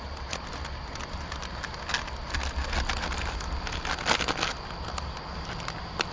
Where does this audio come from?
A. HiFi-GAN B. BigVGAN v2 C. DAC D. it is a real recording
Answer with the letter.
D